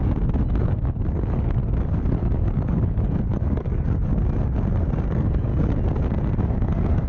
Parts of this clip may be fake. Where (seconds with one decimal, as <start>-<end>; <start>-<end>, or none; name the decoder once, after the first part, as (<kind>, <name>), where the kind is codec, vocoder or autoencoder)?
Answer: 0.6-1.6 (codec, DAC); 2.1-4.1; 5.1-5.5; 6.4-7.1